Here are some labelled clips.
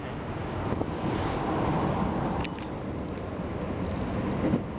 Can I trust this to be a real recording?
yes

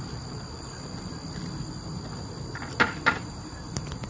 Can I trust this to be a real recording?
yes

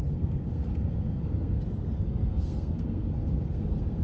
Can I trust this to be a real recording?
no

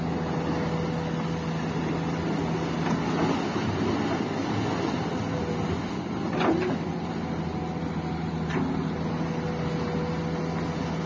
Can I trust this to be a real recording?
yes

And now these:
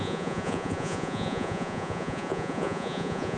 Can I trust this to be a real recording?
no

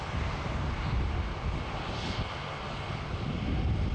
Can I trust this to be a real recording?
yes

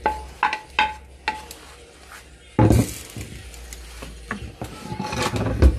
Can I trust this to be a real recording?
yes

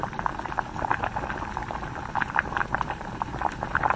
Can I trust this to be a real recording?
no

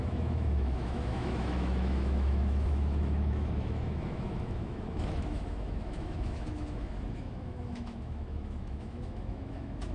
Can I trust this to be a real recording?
no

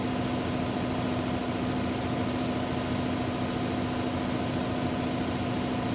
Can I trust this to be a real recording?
yes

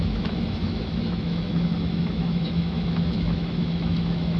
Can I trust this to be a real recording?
no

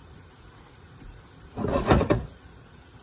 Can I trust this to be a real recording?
no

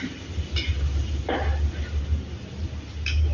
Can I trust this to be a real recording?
yes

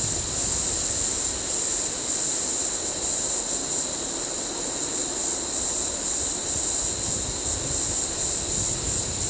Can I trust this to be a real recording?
yes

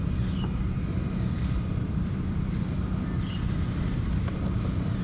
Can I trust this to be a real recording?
yes